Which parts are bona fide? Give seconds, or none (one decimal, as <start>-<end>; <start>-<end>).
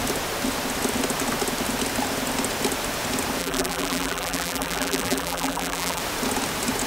0.0-3.4; 6.0-6.9